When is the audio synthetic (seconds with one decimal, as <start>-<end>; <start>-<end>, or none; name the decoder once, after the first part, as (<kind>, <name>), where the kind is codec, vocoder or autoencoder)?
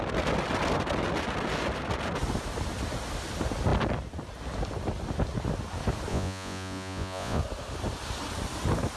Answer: 6.1-7.4 (vocoder, Vocos)